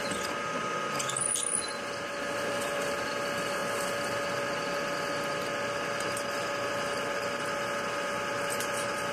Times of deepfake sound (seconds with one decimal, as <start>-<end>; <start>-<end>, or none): none